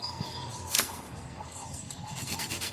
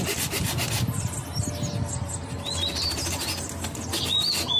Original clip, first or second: second